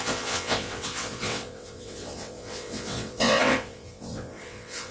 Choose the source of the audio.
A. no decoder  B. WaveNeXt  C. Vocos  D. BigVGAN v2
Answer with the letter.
B